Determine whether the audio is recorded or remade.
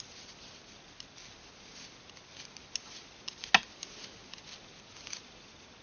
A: recorded